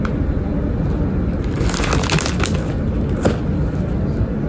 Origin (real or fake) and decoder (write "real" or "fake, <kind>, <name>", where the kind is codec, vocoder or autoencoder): real